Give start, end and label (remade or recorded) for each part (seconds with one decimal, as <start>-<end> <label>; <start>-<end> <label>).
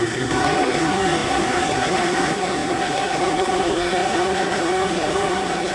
0.0-5.7 remade